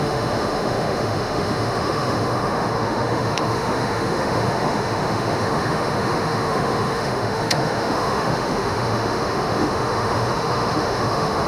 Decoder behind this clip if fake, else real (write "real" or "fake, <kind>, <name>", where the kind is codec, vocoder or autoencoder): fake, autoencoder, DAC-VAE